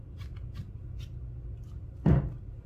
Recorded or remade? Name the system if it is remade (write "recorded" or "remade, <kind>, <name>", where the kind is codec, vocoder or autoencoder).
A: recorded